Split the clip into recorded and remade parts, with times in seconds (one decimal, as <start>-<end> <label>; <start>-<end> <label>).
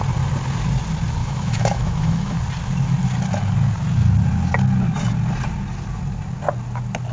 0.0-1.2 recorded; 1.2-2.4 remade; 2.4-7.1 recorded